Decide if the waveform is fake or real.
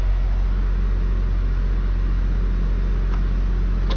real